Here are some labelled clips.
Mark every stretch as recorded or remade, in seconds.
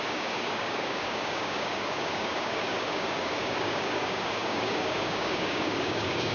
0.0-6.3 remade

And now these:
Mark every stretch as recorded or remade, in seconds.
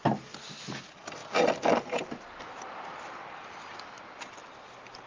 0.0-5.1 recorded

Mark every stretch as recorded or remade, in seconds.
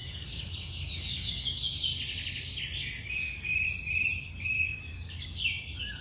0.0-1.9 remade; 1.9-3.1 recorded; 3.1-3.5 remade; 3.5-4.2 recorded; 4.2-6.0 remade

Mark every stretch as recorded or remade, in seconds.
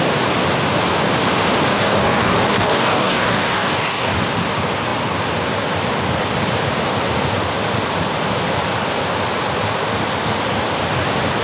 0.0-1.7 recorded; 1.7-4.1 remade; 4.1-11.4 recorded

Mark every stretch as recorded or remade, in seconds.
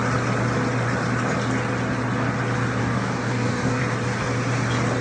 0.0-2.8 recorded; 2.8-3.8 remade; 3.8-5.0 recorded